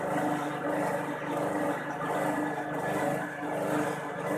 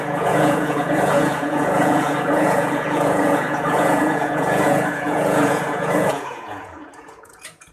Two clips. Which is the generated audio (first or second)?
second